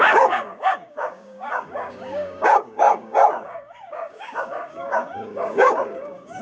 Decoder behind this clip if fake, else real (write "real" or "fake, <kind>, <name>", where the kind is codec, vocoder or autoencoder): fake, codec, DAC